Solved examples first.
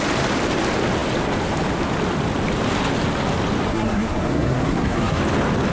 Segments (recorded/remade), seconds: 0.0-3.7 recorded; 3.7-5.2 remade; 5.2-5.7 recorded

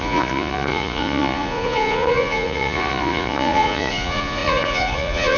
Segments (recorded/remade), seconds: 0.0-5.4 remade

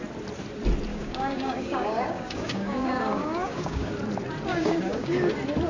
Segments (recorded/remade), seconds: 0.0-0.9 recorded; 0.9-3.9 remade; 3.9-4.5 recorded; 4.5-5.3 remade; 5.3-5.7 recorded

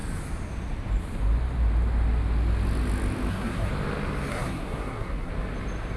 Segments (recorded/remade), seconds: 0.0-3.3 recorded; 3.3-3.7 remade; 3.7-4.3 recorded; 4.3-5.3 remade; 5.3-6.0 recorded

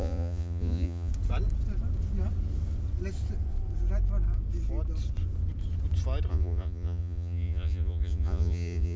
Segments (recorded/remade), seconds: 0.0-1.1 remade; 1.1-6.3 recorded; 6.3-9.0 remade

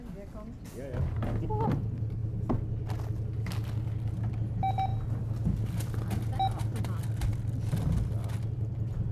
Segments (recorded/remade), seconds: 0.0-9.1 recorded

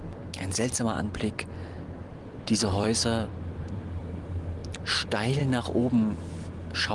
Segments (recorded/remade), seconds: 0.0-2.0 recorded; 2.0-5.4 remade; 5.4-6.9 recorded

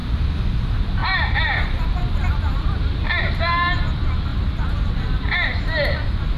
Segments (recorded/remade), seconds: 0.0-1.0 recorded; 1.0-3.4 remade; 3.4-4.3 recorded; 4.3-5.6 remade; 5.6-6.4 recorded